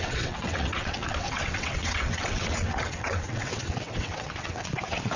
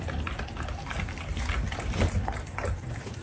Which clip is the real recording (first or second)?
second